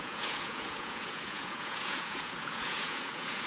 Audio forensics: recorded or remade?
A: remade